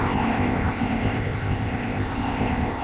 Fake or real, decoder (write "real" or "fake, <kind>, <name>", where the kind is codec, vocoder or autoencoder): fake, codec, ZipCodec